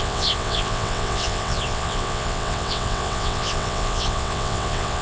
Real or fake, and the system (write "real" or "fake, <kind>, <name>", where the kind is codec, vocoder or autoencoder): fake, vocoder, WaveNeXt